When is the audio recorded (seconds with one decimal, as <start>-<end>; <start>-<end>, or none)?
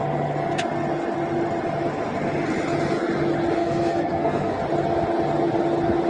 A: 0.0-3.6; 4.6-6.1